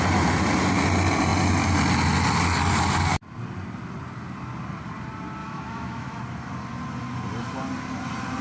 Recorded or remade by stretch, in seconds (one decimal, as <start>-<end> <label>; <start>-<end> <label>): 0.0-5.4 recorded; 5.4-6.2 remade; 6.2-8.4 recorded